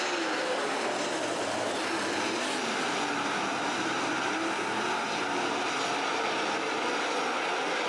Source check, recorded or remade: recorded